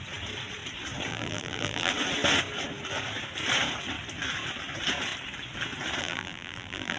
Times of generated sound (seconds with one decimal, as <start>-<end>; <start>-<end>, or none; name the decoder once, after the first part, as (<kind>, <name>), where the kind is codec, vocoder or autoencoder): 1.1-1.9 (vocoder, BigVGAN v2); 6.0-7.0